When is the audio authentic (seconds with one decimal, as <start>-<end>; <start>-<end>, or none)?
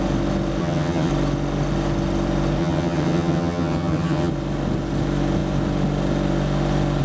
0.0-0.6; 1.1-2.6; 4.3-7.0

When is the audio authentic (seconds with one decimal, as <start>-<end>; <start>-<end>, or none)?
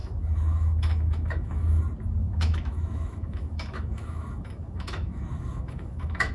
1.8-2.2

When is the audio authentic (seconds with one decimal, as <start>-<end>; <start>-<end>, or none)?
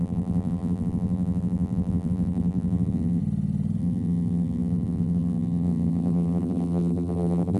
3.2-3.8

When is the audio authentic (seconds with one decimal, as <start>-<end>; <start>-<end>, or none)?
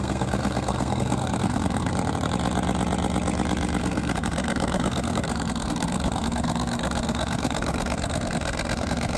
1.9-3.8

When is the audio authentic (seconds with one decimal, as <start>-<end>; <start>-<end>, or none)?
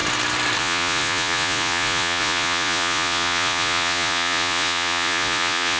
0.0-0.6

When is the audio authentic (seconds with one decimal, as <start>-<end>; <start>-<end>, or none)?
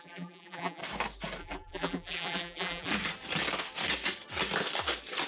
0.8-1.4; 2.9-5.3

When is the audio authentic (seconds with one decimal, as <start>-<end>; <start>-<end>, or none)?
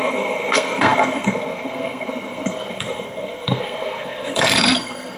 none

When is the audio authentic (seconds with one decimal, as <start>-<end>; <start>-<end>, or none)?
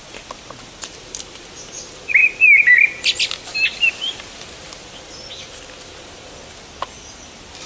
0.0-7.7